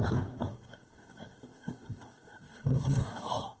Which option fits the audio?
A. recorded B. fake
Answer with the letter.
B